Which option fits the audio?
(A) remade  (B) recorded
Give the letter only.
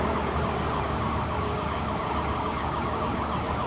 A